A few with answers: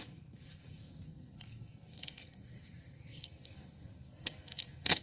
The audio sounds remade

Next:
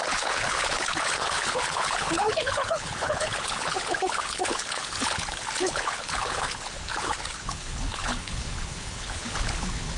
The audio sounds remade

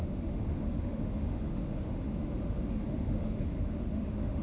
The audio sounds remade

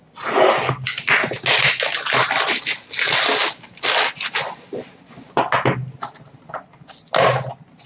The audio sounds recorded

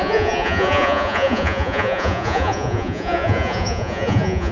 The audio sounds remade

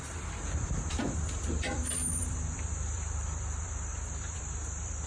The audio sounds remade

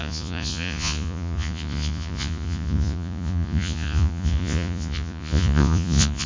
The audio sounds remade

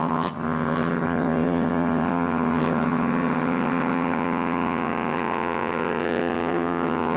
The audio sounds remade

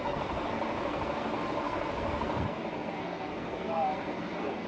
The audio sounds remade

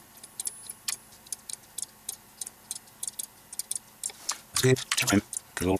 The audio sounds recorded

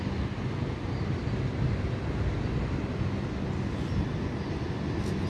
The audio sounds recorded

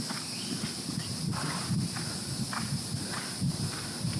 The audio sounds recorded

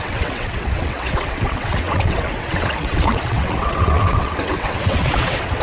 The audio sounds remade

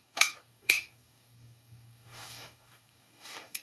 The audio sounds remade